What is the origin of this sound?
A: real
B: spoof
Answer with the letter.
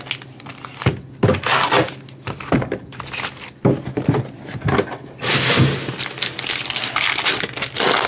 A